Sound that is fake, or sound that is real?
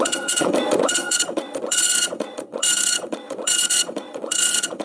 fake